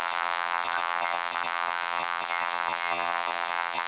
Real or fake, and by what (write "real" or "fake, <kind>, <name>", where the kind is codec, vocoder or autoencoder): fake, vocoder, BigVGAN v2